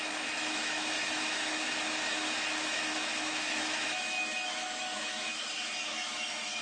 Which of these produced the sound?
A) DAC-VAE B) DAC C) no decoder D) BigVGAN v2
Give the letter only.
A